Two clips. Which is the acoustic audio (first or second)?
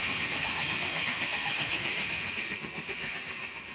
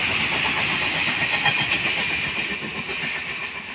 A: second